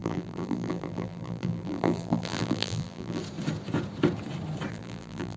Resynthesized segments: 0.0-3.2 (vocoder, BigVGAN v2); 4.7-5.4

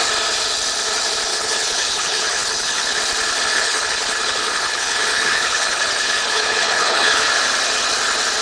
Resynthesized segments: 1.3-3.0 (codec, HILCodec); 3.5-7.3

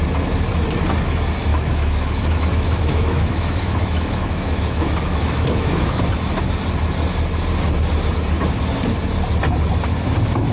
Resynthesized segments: 1.5-6.0 (autoencoder, DAC-VAE)